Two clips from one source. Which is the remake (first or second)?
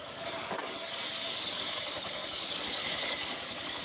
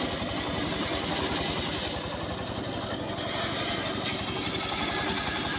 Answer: first